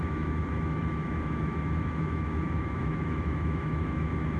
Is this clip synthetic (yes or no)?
yes